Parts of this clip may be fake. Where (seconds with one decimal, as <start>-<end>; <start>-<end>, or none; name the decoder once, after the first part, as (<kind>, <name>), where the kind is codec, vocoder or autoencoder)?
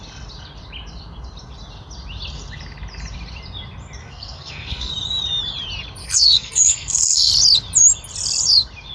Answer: 4.0-4.9 (codec, SNAC); 6.0-7.3